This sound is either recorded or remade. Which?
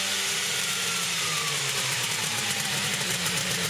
remade